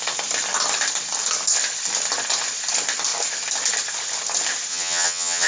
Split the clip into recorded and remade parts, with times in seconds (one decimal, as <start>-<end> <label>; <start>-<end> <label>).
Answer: 0.0-4.7 recorded; 4.7-5.5 remade